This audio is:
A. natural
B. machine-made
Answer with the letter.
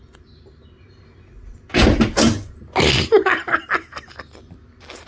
A